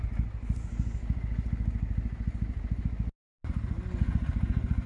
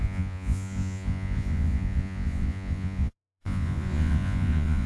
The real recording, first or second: first